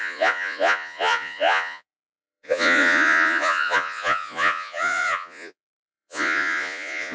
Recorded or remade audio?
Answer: remade